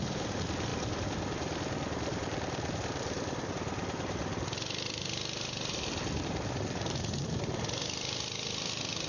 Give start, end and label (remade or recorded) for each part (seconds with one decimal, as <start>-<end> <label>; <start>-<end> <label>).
0.0-9.1 remade